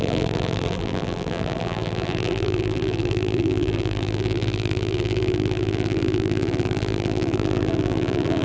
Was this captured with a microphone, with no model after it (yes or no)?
no